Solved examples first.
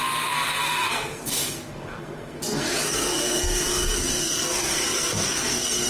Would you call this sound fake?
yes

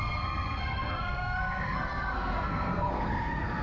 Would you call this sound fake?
yes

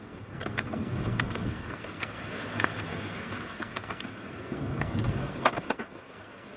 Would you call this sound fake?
yes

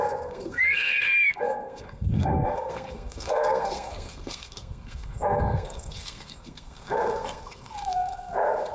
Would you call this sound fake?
yes